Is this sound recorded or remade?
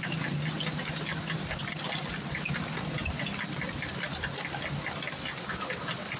recorded